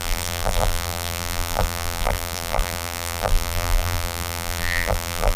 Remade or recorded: remade